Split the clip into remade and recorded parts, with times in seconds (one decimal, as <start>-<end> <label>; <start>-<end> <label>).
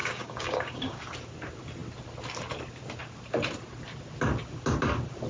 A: 0.0-1.0 remade; 1.0-5.3 recorded